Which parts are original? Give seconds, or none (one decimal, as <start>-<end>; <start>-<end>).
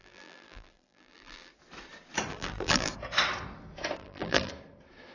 1.5-2.3; 2.9-4.0; 4.5-5.1